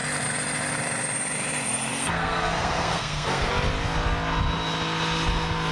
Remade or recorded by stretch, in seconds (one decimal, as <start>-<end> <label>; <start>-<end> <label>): 0.0-1.9 recorded; 1.9-3.5 remade; 3.5-5.7 recorded

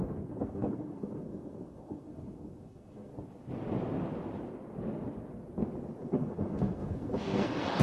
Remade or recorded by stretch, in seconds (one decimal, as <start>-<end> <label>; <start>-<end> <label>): 0.0-3.1 remade; 3.1-6.0 recorded; 6.0-7.8 remade

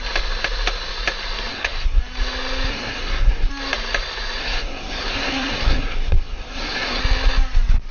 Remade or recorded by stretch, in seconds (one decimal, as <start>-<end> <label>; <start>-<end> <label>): 0.0-1.5 recorded; 1.5-2.0 remade; 2.0-2.7 recorded; 2.7-3.5 remade; 3.5-4.4 recorded; 4.4-7.0 remade; 7.0-7.9 recorded

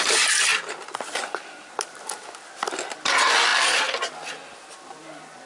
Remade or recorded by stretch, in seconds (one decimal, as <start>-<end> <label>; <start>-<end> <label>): 0.0-5.5 recorded